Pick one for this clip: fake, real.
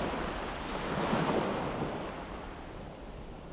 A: real